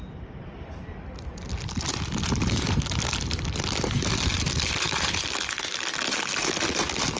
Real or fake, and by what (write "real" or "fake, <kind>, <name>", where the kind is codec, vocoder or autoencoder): fake, vocoder, BigVGAN v2